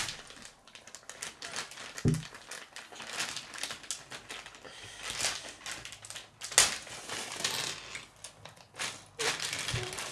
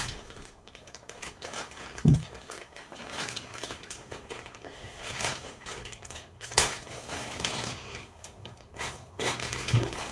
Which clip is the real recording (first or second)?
first